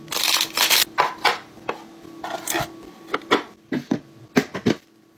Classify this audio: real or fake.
real